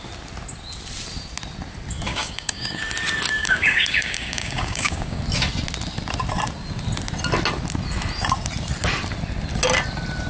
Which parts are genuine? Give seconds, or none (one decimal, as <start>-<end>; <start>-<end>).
0.0-2.1; 2.8-3.4; 5.2-10.3